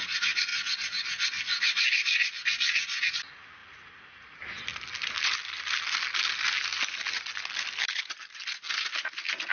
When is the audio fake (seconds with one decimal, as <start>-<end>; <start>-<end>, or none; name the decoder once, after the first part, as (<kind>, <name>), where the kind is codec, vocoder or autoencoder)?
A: none